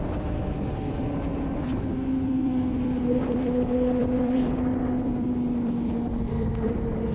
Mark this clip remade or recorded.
remade